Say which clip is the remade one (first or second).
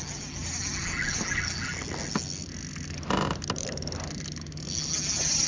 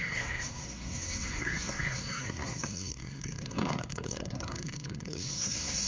second